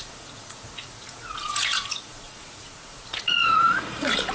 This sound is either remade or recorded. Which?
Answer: remade